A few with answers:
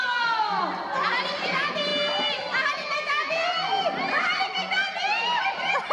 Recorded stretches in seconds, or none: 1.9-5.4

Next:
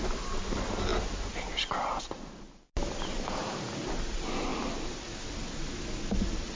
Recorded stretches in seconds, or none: 0.0-6.6

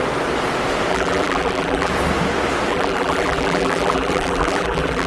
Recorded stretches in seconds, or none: 0.0-0.9; 1.9-2.7

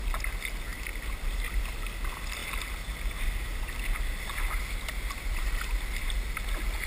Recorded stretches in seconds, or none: 0.0-6.9

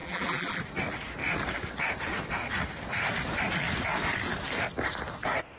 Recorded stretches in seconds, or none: 0.6-5.6